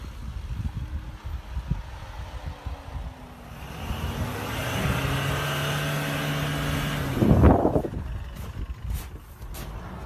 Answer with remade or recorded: recorded